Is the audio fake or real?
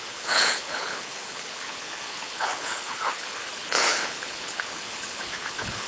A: fake